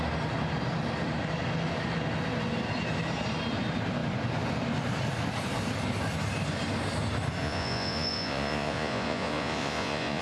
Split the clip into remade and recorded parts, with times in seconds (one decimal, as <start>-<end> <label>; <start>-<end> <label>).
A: 0.0-7.4 recorded; 7.4-10.2 remade